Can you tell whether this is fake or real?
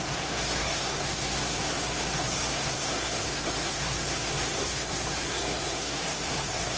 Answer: fake